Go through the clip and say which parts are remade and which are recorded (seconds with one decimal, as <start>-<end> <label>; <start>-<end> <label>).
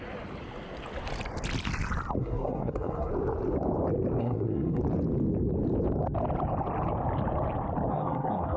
0.0-2.2 recorded; 2.2-3.1 remade; 3.1-4.2 recorded; 4.2-4.8 remade; 4.8-7.9 recorded; 7.9-8.6 remade